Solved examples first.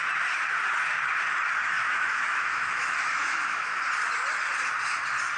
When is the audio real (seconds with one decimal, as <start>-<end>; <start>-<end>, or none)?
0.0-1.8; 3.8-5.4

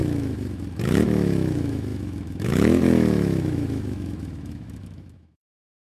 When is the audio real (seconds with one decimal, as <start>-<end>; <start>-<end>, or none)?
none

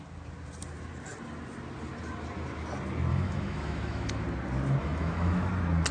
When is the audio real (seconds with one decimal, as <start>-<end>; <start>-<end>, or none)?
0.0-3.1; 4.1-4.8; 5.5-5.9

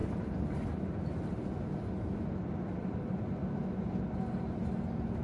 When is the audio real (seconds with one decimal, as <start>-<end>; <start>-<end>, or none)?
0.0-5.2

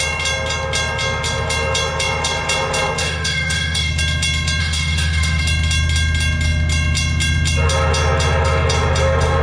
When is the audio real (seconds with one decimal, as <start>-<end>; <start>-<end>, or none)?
0.0-3.0; 3.9-4.6; 5.4-9.4

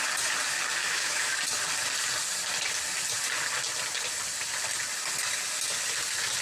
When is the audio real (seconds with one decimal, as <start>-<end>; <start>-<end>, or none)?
0.0-0.8; 1.4-6.4